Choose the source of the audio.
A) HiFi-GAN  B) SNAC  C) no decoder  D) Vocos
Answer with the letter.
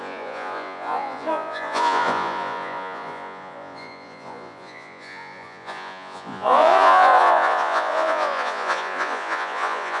D